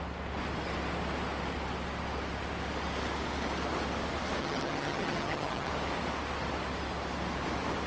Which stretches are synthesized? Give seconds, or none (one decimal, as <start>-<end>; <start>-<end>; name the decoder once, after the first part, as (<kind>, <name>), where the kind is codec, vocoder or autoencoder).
4.4-5.7 (vocoder, HiFi-GAN)